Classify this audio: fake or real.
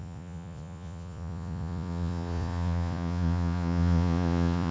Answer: fake